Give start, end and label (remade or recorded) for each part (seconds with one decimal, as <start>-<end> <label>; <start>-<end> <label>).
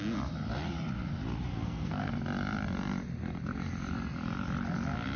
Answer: 0.0-1.5 recorded; 1.5-2.1 remade; 2.1-5.2 recorded